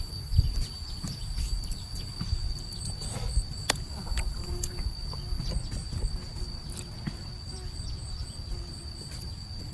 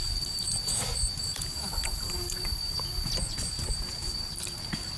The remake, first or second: second